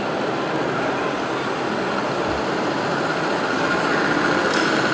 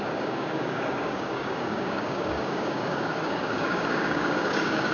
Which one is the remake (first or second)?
second